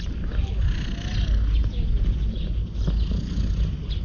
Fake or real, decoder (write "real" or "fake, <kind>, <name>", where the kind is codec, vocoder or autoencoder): real